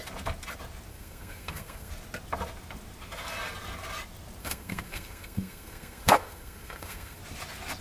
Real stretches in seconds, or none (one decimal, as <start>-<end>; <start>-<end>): 0.0-0.9; 1.9-4.4; 7.2-7.8